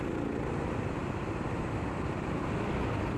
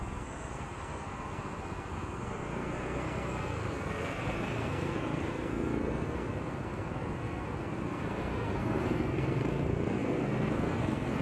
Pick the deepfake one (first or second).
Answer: second